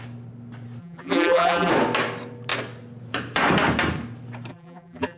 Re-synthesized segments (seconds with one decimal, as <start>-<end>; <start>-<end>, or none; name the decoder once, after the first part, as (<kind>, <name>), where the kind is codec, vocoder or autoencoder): 0.8-1.7 (vocoder, BigVGAN v2); 4.5-5.2